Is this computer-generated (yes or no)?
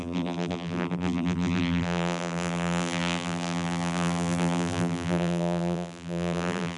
yes